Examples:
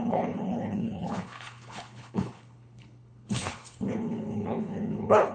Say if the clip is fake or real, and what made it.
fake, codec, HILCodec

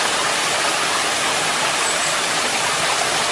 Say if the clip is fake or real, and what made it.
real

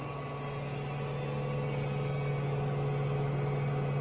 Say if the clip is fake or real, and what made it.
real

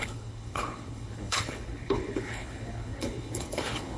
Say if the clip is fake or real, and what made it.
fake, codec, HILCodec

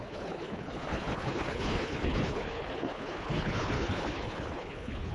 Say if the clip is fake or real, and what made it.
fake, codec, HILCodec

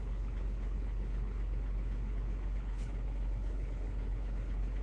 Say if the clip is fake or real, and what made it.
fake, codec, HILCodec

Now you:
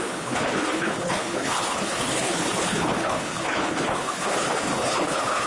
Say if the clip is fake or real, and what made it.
fake, codec, HILCodec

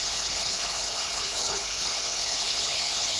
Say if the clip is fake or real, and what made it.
fake, codec, HILCodec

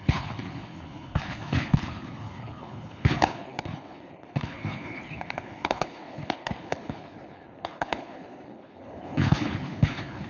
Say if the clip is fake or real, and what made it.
fake, codec, HILCodec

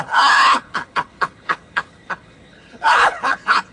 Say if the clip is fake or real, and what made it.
fake, codec, HILCodec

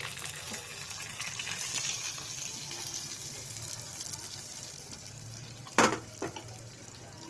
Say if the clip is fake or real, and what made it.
real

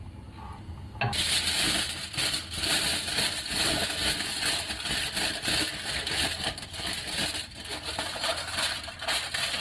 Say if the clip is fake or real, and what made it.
real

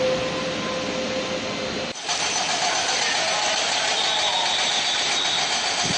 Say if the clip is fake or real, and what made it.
real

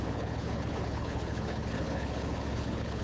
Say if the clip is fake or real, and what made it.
fake, codec, HILCodec